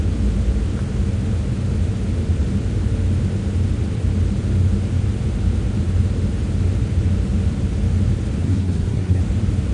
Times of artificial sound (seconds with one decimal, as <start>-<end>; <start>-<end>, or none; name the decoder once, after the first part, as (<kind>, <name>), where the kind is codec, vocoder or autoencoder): 8.4-9.2 (codec, SNAC)